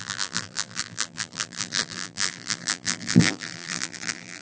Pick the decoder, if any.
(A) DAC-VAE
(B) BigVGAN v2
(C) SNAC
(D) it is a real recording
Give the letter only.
B